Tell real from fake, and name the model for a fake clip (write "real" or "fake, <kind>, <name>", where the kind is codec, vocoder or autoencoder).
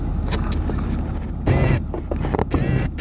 real